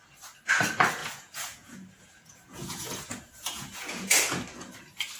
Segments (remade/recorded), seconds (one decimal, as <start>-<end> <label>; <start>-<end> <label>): 0.0-1.0 recorded; 1.0-4.1 remade; 4.1-5.2 recorded